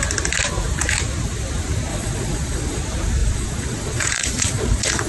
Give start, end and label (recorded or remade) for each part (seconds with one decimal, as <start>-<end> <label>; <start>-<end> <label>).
0.0-1.9 recorded; 1.9-2.8 remade; 2.8-3.2 recorded; 3.2-5.1 remade